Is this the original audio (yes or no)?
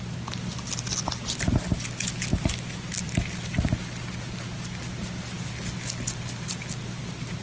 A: yes